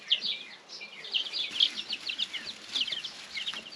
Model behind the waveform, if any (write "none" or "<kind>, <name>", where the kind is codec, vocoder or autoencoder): none